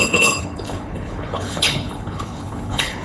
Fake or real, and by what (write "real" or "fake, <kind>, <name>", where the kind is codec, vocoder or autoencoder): fake, codec, HILCodec